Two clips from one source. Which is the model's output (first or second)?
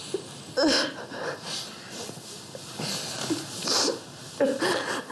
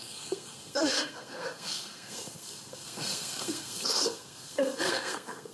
second